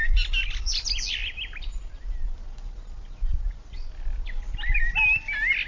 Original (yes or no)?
yes